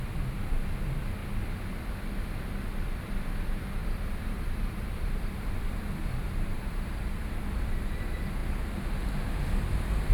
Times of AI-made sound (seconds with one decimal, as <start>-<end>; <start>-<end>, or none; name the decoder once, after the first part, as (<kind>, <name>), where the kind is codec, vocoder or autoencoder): 3.8-7.2 (vocoder, BigVGAN v2)